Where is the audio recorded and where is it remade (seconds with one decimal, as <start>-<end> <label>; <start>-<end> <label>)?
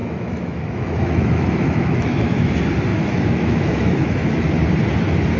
0.0-2.5 remade; 2.5-2.9 recorded; 2.9-4.5 remade; 4.5-5.4 recorded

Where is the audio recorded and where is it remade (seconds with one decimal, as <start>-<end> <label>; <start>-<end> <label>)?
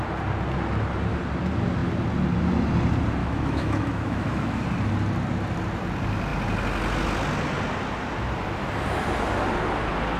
0.0-3.2 recorded; 3.2-4.6 remade; 4.6-10.2 recorded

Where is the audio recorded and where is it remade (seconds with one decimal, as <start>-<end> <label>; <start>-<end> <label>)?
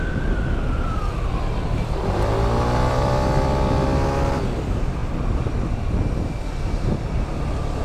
0.0-7.8 recorded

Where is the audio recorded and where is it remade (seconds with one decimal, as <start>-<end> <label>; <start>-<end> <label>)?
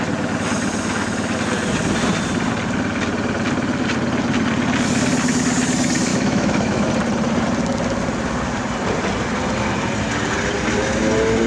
0.0-6.1 recorded; 6.1-6.9 remade; 6.9-11.5 recorded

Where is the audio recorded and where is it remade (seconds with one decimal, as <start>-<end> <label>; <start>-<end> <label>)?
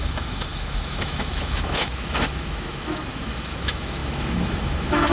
0.0-5.1 remade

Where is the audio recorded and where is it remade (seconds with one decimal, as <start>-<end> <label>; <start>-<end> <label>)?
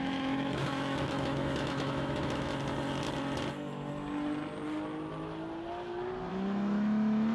0.0-2.5 remade; 2.5-6.3 recorded; 6.3-7.3 remade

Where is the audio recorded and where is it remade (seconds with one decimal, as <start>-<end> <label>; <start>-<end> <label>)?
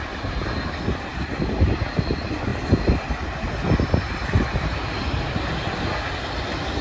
0.0-6.8 recorded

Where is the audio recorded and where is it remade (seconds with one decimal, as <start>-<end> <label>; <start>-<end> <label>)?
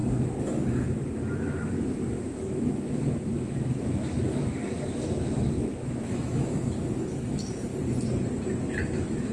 0.0-7.7 remade; 7.7-8.6 recorded; 8.6-9.3 remade